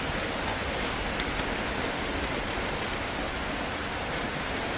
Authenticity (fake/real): real